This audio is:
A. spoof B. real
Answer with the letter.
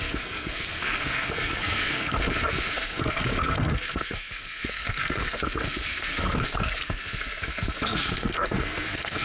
A